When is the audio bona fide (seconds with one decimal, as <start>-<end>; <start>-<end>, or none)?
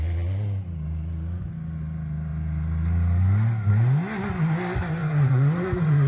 0.0-5.0